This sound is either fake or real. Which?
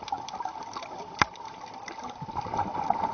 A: real